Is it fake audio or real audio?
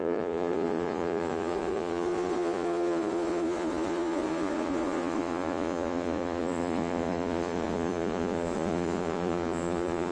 fake